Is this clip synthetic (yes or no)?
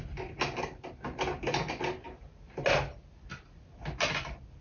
no